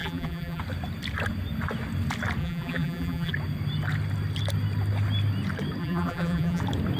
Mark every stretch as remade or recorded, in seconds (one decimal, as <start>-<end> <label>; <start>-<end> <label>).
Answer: 0.0-0.6 remade; 0.6-2.4 recorded; 2.4-3.3 remade; 3.3-5.8 recorded; 5.8-6.6 remade; 6.6-7.0 recorded